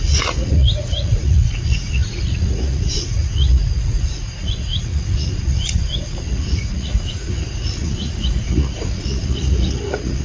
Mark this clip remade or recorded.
remade